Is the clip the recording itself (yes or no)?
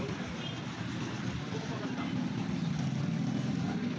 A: yes